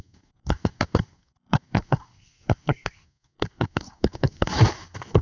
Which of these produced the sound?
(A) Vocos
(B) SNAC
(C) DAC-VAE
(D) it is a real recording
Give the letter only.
B